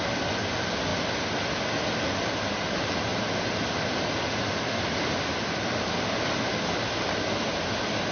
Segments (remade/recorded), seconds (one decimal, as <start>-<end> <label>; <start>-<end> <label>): 0.0-8.1 recorded